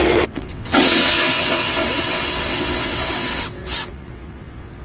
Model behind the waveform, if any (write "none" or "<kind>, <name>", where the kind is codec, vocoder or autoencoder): vocoder, WaveNeXt